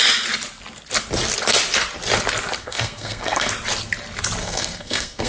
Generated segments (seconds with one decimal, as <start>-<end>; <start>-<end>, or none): 2.6-3.5; 4.4-5.3